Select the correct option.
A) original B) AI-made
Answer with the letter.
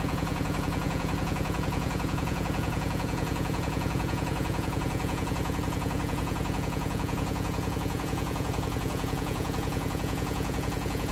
B